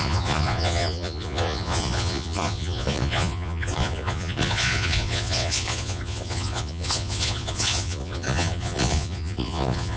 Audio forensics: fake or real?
fake